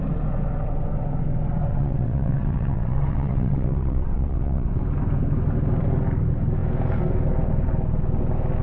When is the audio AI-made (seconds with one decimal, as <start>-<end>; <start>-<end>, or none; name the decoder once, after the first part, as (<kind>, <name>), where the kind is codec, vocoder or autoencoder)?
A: 1.7-4.8 (vocoder, WaveNeXt)